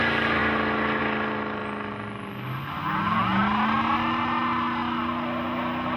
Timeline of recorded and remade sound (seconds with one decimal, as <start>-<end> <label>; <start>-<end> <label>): 0.0-6.0 recorded